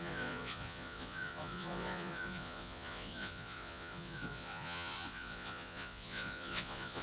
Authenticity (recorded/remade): remade